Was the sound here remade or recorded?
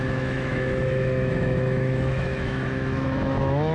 remade